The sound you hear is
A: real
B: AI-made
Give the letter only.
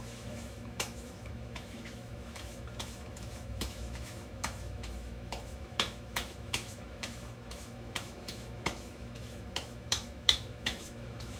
B